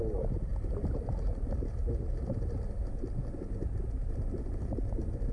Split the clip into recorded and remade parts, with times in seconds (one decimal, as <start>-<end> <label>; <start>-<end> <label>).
0.0-5.3 recorded